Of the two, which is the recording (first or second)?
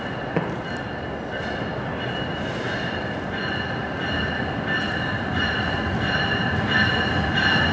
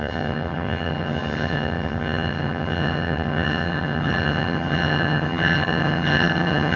first